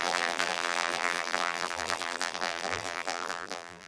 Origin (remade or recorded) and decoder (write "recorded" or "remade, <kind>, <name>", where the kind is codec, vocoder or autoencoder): remade, vocoder, BigVGAN v2